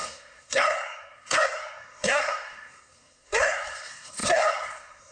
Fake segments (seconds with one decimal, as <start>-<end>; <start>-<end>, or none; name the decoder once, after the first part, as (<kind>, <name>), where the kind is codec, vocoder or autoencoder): 0.0-5.1 (codec, SNAC)